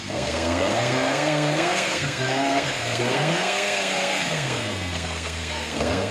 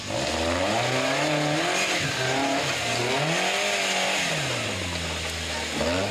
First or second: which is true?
second